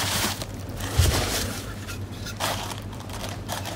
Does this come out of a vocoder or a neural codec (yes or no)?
yes